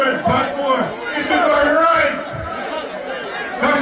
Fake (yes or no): yes